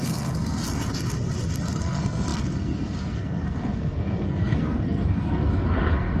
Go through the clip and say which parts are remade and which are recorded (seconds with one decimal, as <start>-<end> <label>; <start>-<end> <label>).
0.0-0.6 remade; 0.6-1.7 recorded; 1.7-6.2 remade